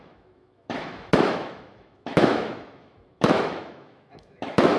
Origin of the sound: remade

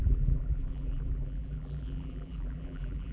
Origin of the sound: remade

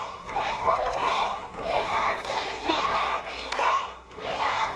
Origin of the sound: remade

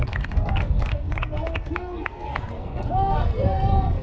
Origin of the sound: remade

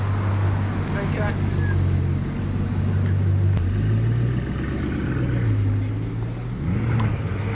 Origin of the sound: recorded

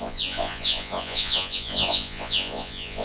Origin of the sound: remade